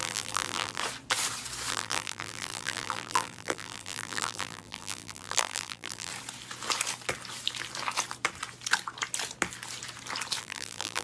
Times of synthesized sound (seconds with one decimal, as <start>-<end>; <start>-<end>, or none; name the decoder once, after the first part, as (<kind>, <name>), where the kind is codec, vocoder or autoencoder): 0.0-0.8 (vocoder, BigVGAN v2); 1.7-6.1; 10.4-11.0